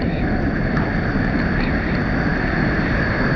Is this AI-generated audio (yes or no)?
no